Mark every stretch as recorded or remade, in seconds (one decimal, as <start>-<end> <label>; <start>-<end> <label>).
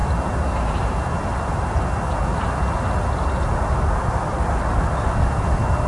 0.0-5.9 recorded